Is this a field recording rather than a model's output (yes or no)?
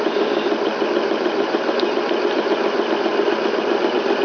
yes